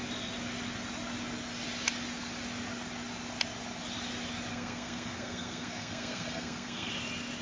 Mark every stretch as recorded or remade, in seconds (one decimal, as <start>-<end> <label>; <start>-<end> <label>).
0.0-4.5 recorded; 4.5-6.9 remade; 6.9-7.4 recorded